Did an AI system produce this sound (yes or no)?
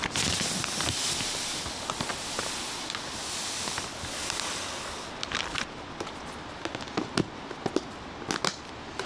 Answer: no